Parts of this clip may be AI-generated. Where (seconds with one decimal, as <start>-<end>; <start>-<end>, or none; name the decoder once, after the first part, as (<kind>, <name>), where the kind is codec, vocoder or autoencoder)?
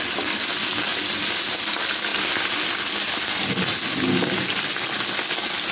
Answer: none